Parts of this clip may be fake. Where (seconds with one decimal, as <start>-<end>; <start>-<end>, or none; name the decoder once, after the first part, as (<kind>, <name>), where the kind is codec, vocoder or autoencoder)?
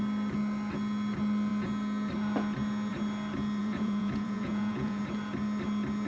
3.6-5.0 (vocoder, Vocos)